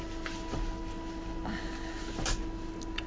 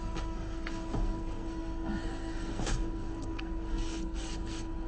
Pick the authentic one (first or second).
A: first